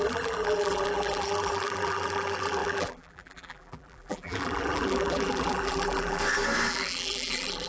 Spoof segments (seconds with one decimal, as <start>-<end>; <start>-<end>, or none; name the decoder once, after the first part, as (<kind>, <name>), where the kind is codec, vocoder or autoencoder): 0.0-6.2 (vocoder, BigVGAN v2); 6.7-7.7